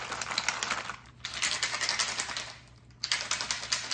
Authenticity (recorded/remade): recorded